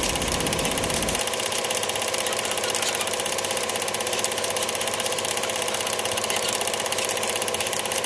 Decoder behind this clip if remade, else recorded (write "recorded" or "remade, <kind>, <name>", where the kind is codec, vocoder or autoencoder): recorded